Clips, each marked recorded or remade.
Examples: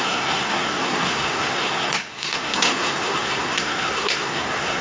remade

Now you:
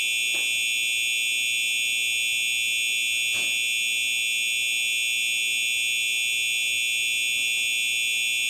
recorded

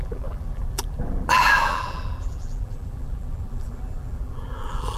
remade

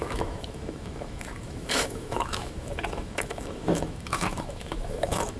remade